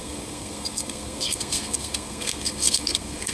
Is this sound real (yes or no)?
no